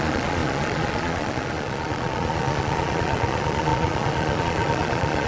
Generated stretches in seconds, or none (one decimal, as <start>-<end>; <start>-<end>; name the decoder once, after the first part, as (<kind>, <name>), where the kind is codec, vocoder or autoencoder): 0.0-5.3 (vocoder, Vocos)